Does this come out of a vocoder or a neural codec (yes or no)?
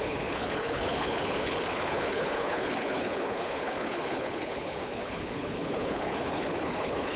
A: yes